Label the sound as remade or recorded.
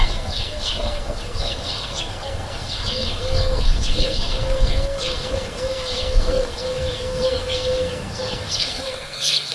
remade